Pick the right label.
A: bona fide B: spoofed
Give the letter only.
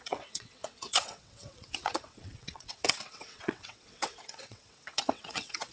B